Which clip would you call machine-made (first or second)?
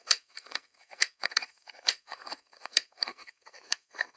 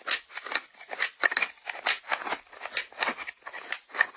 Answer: first